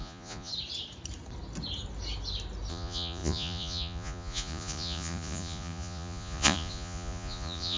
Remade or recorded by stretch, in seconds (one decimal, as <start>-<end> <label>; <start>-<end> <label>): 0.0-0.5 remade; 0.5-2.7 recorded; 2.7-7.8 remade